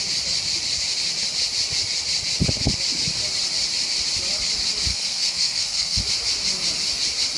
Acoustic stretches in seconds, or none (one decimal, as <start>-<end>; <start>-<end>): 0.0-4.9; 6.0-7.4